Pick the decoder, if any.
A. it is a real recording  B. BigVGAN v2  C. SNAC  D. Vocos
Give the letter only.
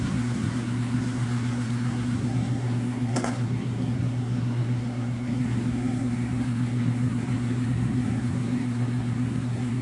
C